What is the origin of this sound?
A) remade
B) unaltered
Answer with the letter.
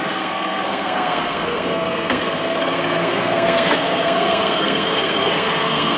A